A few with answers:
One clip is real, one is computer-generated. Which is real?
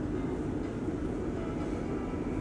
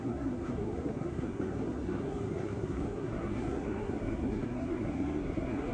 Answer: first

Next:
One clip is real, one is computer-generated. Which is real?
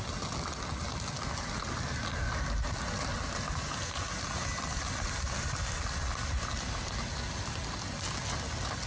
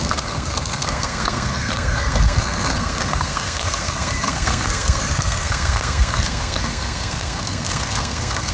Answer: first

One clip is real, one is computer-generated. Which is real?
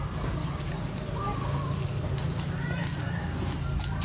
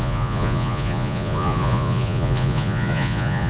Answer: first